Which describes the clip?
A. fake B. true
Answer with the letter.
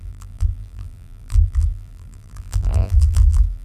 A